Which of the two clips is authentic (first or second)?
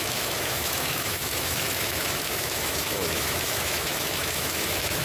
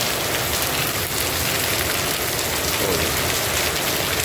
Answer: second